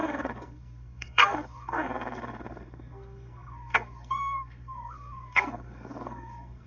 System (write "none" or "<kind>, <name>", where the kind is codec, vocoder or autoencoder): codec, SNAC